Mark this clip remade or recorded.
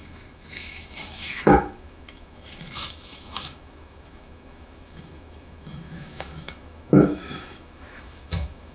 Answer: remade